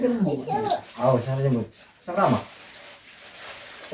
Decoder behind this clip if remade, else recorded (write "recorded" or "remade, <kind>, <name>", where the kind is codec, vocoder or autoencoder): recorded